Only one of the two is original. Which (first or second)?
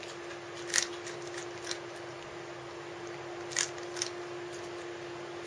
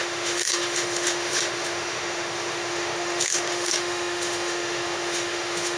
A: first